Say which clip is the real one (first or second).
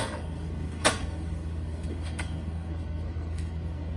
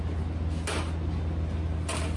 second